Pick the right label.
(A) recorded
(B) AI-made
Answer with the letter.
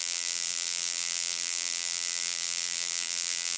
B